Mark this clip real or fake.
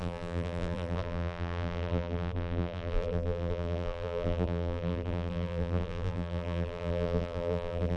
fake